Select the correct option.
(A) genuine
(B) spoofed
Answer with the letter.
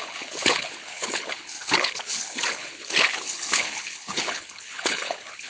B